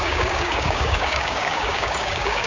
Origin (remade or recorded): remade